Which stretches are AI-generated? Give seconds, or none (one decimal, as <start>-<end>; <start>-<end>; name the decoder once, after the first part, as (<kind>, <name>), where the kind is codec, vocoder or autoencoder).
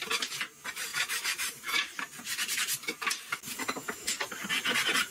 0.9-3.6 (vocoder, BigVGAN v2)